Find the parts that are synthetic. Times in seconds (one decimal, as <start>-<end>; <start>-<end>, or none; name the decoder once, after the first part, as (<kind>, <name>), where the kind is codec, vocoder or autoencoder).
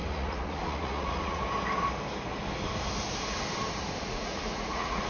0.0-1.4 (vocoder, Vocos); 4.0-5.1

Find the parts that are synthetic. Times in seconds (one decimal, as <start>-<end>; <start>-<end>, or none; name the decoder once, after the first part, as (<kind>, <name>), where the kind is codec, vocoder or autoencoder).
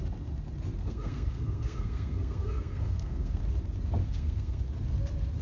0.8-3.4 (codec, SNAC); 4.0-4.6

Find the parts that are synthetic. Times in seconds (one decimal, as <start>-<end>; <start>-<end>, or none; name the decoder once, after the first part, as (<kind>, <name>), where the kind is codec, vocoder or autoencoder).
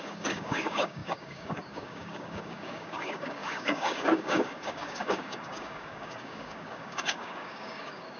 0.0-8.2 (codec, DAC)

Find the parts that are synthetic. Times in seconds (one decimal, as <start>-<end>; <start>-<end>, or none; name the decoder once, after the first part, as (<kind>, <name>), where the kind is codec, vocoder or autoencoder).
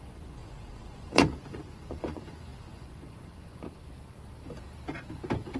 0.0-3.8 (vocoder, Vocos)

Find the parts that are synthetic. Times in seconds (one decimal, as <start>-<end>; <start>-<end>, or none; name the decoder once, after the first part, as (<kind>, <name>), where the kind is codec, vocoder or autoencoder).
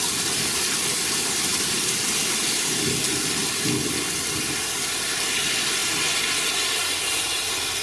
none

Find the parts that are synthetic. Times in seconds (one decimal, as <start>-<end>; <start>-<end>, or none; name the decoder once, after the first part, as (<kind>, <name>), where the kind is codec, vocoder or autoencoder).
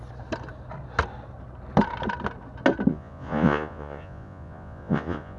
2.9-5.4 (vocoder, Vocos)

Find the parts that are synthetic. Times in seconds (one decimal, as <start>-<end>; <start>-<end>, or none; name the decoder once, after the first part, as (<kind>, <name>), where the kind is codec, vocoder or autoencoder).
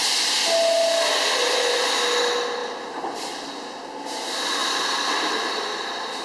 none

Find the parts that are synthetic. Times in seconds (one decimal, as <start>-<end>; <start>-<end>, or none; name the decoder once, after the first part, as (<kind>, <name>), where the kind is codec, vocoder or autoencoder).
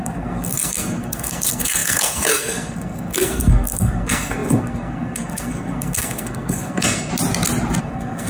0.0-7.1 (codec, SNAC); 7.8-8.3